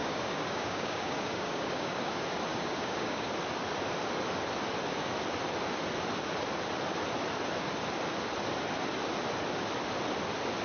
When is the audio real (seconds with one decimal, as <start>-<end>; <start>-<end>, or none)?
2.1-2.5; 3.3-10.6